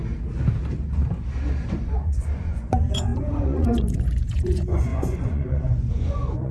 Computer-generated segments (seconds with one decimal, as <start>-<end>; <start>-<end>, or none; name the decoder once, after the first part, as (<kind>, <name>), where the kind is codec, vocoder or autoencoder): 1.7-6.5 (vocoder, Vocos)